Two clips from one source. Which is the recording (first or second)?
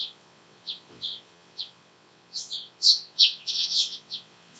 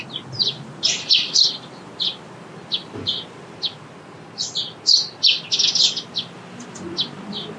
second